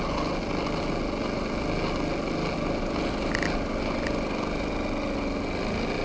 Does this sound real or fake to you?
real